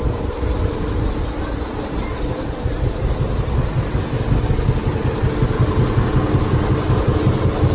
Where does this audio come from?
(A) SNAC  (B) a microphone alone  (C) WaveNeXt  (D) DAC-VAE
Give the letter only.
B